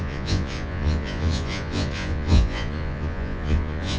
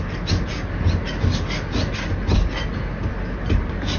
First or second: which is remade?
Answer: first